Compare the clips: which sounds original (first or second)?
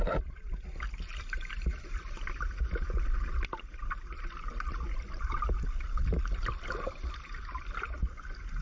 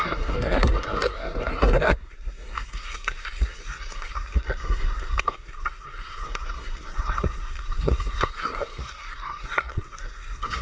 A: first